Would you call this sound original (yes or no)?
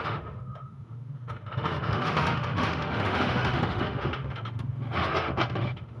no